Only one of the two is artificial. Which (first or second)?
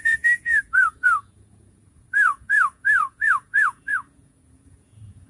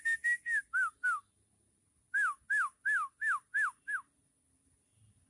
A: first